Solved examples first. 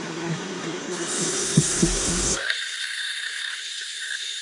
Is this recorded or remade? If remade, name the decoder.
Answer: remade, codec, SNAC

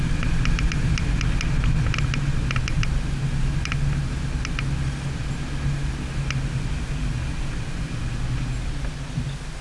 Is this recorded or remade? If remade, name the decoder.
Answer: recorded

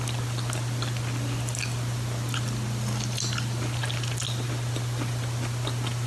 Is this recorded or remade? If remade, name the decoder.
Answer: recorded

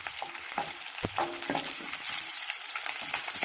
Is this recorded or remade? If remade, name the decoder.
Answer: recorded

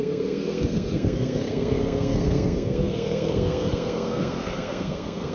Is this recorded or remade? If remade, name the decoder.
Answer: remade, codec, SNAC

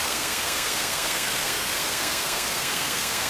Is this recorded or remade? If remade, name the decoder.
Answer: remade, codec, SNAC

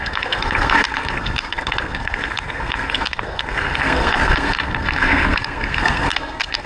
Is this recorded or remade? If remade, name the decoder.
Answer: remade, codec, SNAC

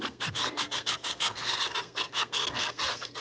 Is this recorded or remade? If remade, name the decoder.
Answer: remade, codec, SNAC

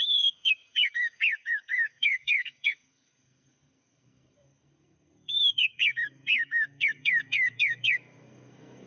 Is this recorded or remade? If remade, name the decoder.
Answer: remade, codec, SNAC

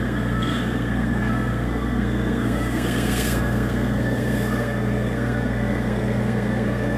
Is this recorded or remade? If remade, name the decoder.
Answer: remade, codec, SNAC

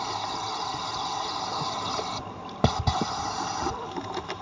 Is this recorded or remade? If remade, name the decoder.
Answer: recorded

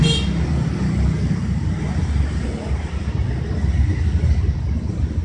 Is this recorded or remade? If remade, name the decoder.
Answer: recorded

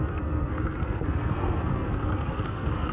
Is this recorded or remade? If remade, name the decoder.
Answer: remade, codec, SNAC